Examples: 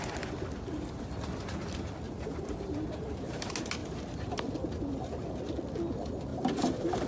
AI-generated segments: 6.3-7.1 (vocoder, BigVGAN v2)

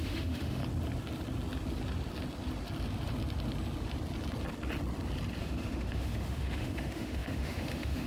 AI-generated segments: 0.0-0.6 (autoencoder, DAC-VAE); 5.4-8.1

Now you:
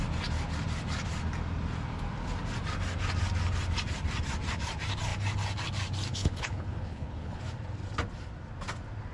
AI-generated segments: 6.1-7.4 (codec, HILCodec)

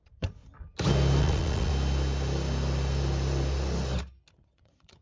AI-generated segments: 0.0-0.4 (vocoder, Vocos); 1.2-1.7; 4.3-5.0

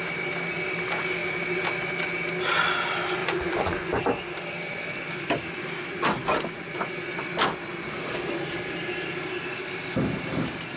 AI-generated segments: 3.2-4.0 (vocoder, Vocos)

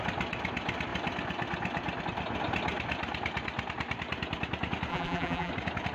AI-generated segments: 4.9-5.5 (vocoder, BigVGAN v2)